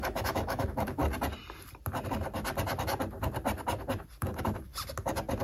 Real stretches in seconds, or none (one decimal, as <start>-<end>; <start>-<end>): 1.0-4.2; 4.7-5.4